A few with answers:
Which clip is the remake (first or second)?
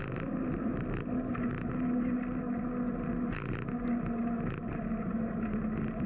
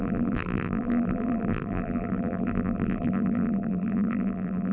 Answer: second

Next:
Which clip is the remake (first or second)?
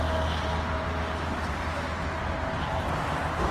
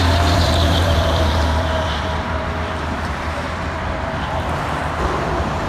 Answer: second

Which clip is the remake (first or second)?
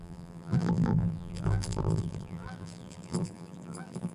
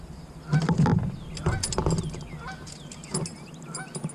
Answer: first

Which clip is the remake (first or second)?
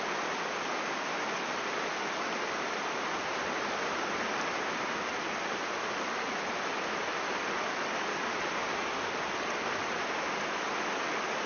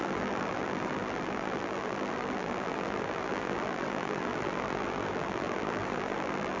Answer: second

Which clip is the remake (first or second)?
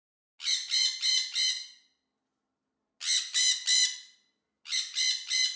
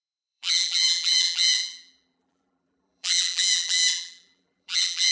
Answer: second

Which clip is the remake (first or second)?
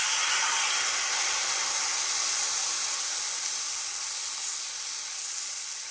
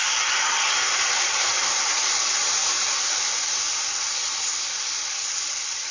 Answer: second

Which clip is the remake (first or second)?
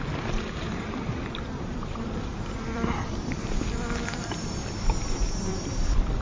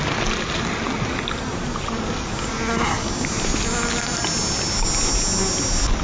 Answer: first